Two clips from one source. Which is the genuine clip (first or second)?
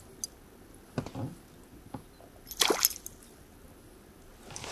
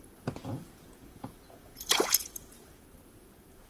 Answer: first